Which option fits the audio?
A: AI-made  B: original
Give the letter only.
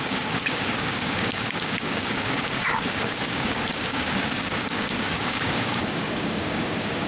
A